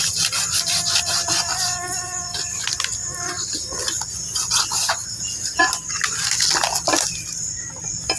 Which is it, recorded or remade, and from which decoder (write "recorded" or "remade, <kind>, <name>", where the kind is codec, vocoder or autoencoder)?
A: recorded